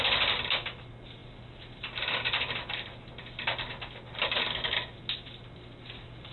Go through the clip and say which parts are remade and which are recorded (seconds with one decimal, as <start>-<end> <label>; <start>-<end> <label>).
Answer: 0.0-6.3 recorded